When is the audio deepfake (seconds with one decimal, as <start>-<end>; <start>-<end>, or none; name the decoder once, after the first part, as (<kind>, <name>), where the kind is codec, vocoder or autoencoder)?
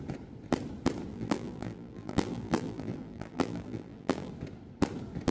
1.1-4.3 (vocoder, BigVGAN v2)